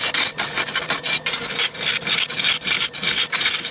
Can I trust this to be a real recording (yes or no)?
no